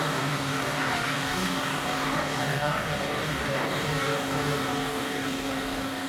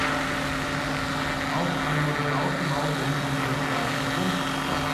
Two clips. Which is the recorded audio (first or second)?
second